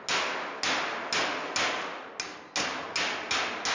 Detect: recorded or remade recorded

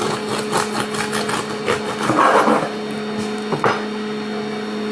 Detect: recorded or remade recorded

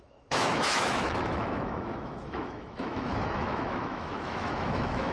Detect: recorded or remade remade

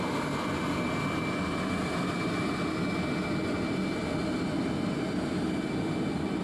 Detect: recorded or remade recorded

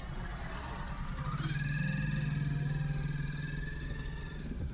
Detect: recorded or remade recorded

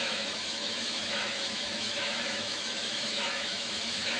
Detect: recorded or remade remade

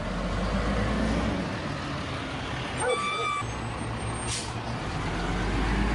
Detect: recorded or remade recorded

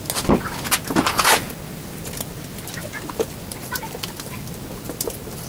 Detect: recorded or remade recorded